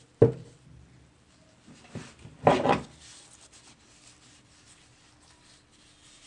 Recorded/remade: recorded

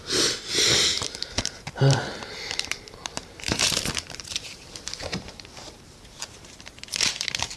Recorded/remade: remade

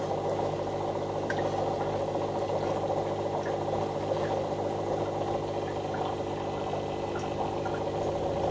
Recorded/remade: recorded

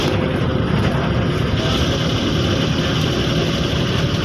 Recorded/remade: recorded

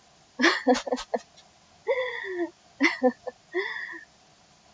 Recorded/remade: recorded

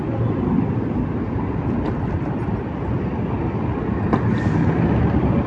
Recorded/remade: recorded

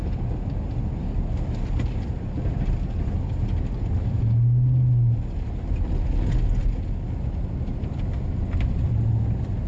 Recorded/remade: recorded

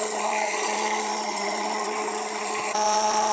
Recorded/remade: remade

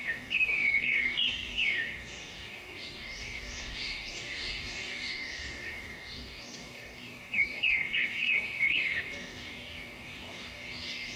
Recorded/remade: remade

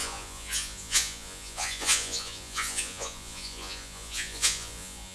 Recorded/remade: remade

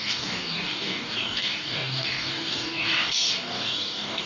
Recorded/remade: remade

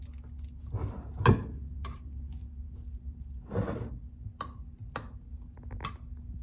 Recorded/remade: recorded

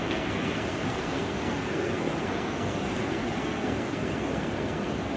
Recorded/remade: remade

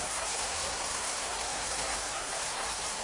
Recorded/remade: remade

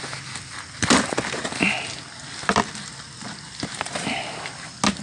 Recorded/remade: recorded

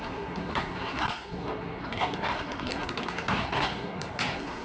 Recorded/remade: remade